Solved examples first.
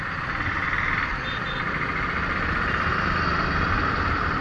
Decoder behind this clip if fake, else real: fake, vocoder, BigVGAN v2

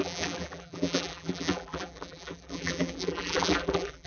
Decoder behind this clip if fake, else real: fake, vocoder, BigVGAN v2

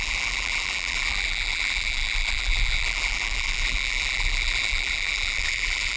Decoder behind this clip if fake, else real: fake, vocoder, BigVGAN v2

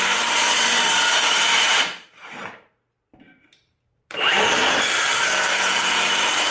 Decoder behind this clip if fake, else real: fake, vocoder, BigVGAN v2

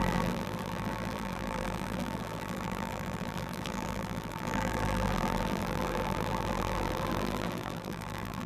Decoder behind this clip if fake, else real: fake, vocoder, BigVGAN v2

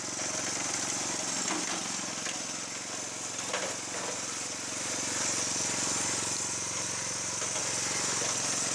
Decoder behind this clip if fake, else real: real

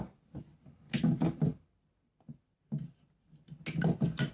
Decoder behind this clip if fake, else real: real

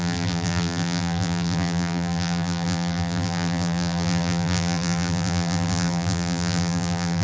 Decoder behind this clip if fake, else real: fake, vocoder, BigVGAN v2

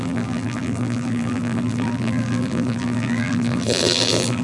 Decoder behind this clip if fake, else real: fake, vocoder, BigVGAN v2